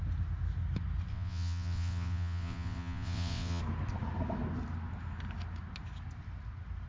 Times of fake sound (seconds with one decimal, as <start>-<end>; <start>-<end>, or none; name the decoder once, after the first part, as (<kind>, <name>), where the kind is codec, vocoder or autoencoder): 1.1-3.6 (vocoder, WaveNeXt)